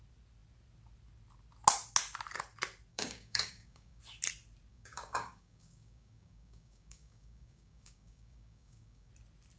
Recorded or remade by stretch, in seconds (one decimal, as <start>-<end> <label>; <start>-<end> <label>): 0.0-2.9 recorded; 2.9-4.0 remade; 4.0-4.7 recorded; 4.7-9.1 remade; 9.1-9.6 recorded